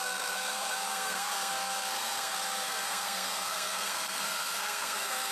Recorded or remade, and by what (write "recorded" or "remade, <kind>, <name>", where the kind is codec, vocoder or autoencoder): remade, codec, SNAC